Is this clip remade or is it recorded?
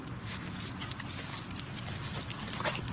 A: recorded